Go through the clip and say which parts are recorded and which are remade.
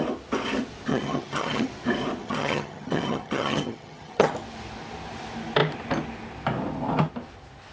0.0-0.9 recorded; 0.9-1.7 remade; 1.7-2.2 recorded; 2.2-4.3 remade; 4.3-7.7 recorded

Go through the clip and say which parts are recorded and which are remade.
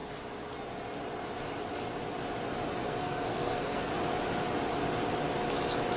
0.0-2.8 recorded; 2.8-3.9 remade; 3.9-6.0 recorded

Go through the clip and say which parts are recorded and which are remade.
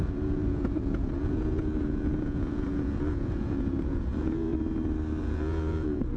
0.0-4.5 remade; 4.5-5.2 recorded; 5.2-6.2 remade